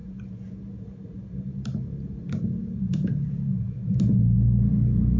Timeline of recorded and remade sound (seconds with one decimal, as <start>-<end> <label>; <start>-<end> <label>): 0.0-0.6 remade; 0.6-2.6 recorded; 2.6-3.8 remade; 3.8-5.2 recorded